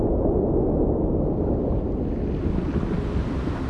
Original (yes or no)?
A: yes